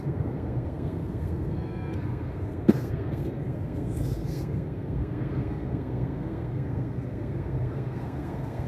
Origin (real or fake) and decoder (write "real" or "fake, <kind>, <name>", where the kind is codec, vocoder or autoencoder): fake, codec, SNAC